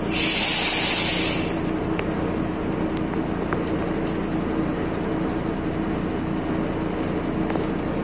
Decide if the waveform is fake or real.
real